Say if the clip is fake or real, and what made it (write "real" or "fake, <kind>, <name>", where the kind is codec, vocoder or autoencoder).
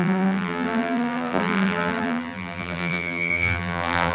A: fake, vocoder, BigVGAN v2